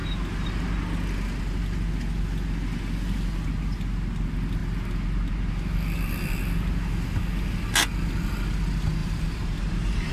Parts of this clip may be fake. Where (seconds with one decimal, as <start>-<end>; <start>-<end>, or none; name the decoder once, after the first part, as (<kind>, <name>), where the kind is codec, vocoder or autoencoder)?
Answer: 9.0-10.1 (vocoder, BigVGAN v2)